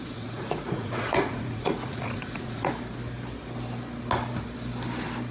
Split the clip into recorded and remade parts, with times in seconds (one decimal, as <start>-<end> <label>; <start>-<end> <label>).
0.0-2.7 remade; 2.7-5.3 recorded